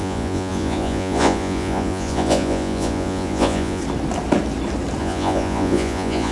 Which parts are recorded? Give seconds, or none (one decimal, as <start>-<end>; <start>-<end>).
3.8-5.0